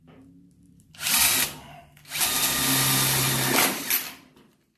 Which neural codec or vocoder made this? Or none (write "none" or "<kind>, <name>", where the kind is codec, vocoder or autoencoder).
none